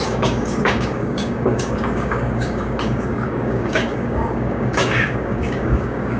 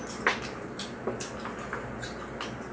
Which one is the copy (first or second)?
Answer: first